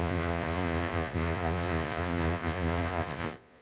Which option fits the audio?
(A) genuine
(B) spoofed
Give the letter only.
B